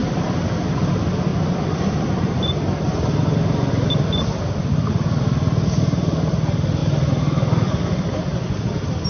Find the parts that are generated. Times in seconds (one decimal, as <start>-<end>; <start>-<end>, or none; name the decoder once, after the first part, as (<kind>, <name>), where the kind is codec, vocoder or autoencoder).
0.0-0.8 (vocoder, BigVGAN v2); 1.3-3.7; 6.8-7.7